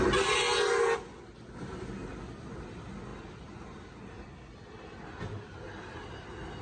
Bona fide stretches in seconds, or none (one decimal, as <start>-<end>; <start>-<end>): 0.0-6.6